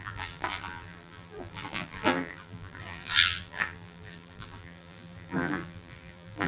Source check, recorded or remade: remade